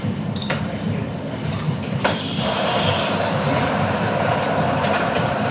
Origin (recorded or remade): remade